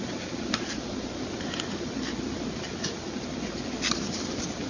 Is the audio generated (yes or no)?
no